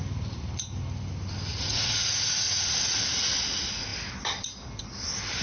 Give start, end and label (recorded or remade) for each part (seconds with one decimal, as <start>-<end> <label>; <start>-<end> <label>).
0.0-1.5 recorded; 1.5-3.2 remade; 3.2-5.4 recorded